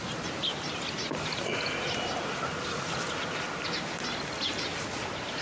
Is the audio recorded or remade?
recorded